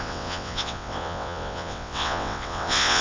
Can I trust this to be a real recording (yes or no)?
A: no